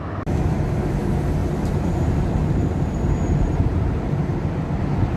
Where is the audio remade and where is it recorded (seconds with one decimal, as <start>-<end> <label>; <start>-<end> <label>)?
0.0-1.4 recorded; 1.4-4.5 remade; 4.5-5.2 recorded